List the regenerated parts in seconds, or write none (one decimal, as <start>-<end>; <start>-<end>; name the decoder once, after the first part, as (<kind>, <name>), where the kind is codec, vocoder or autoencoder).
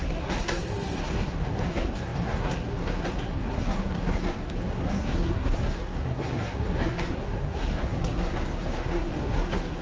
0.0-9.8 (codec, SNAC)